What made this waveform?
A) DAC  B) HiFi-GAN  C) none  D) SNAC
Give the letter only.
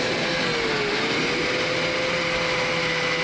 C